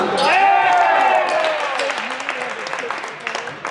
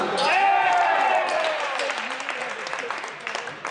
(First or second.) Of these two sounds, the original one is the first